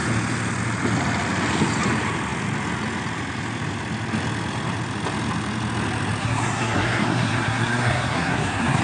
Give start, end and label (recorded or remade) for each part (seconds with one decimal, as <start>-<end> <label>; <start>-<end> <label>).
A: 0.0-6.2 recorded; 6.2-8.8 remade